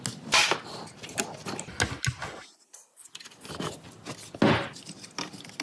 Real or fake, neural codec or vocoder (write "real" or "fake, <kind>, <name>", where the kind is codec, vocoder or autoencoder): real